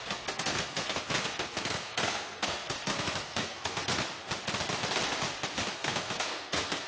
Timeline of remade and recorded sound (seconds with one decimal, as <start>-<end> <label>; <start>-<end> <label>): 0.0-4.0 remade; 4.0-5.6 recorded; 5.6-6.9 remade